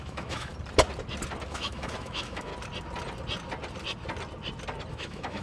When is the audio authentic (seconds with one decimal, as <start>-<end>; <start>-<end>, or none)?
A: 0.5-1.5; 2.5-4.9